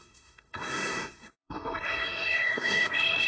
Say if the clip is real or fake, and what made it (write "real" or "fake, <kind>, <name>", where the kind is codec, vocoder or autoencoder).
fake, codec, SNAC